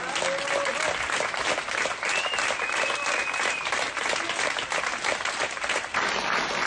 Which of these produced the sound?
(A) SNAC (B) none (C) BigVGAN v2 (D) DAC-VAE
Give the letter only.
B